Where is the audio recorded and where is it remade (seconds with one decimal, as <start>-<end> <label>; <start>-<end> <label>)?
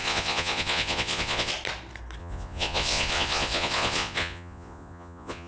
0.0-1.5 remade; 1.5-2.2 recorded; 2.2-5.5 remade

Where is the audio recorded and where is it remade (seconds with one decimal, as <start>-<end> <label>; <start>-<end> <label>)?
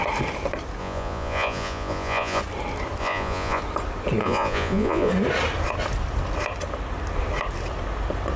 0.0-0.8 recorded; 0.8-2.4 remade; 2.4-3.0 recorded; 3.0-3.6 remade; 3.6-4.2 recorded; 4.2-5.1 remade; 5.1-8.4 recorded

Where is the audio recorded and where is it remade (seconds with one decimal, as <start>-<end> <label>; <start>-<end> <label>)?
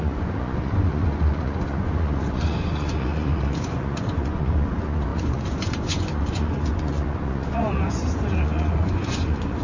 0.0-9.6 remade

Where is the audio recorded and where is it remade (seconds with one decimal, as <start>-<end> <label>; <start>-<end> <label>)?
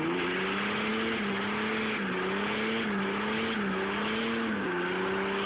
0.0-5.5 recorded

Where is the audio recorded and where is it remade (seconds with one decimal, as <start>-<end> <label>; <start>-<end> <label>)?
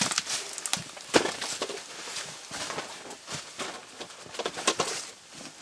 0.0-5.6 recorded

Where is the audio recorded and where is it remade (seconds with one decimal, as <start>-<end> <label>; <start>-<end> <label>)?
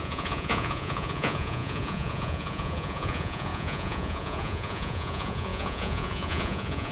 0.0-6.9 remade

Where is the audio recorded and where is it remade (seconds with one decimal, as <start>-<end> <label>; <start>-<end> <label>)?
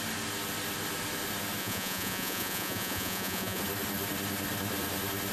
0.0-1.6 recorded; 1.6-3.6 remade; 3.6-5.3 recorded